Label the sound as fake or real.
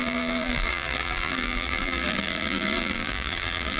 fake